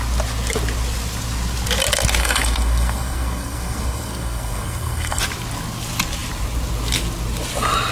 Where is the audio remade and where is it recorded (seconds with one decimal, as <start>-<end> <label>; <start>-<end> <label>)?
0.0-2.2 recorded; 2.2-5.2 remade; 5.2-7.9 recorded